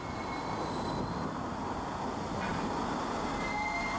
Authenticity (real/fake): real